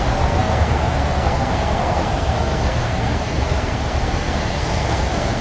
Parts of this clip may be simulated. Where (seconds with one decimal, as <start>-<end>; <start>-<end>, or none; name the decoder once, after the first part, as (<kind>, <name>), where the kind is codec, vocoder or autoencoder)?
0.0-5.4 (codec, SNAC)